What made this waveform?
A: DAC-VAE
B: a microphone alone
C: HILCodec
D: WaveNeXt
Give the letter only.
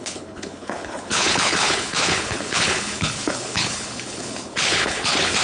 C